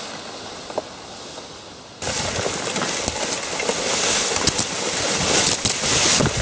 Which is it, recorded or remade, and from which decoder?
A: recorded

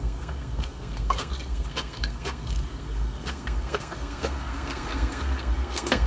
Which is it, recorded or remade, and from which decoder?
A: remade, codec, SNAC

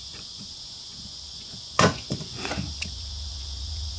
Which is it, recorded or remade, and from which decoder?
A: remade, vocoder, Vocos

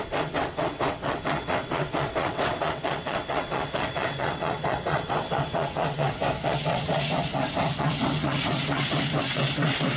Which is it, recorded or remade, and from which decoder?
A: remade, vocoder, WaveNeXt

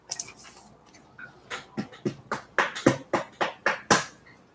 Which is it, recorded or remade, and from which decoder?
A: recorded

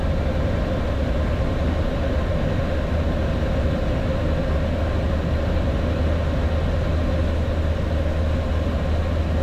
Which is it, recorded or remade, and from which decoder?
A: recorded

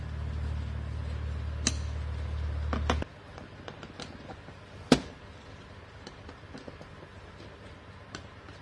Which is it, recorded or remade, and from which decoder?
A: recorded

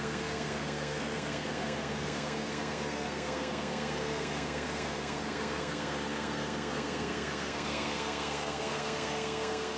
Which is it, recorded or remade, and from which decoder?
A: remade, codec, SNAC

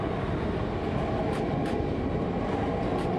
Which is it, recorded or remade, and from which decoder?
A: recorded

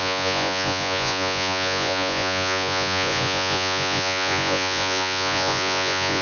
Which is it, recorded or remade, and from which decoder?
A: remade, vocoder, Vocos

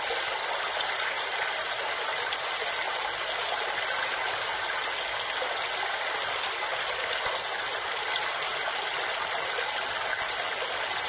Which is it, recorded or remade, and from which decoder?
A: recorded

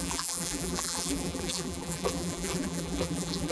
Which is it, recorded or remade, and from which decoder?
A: remade, vocoder, BigVGAN v2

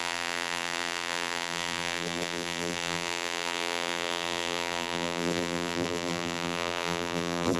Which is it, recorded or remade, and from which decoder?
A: remade, vocoder, BigVGAN v2